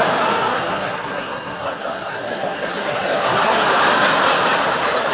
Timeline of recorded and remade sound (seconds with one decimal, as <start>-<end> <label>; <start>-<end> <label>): 0.0-0.5 recorded; 0.5-3.6 remade; 3.6-5.1 recorded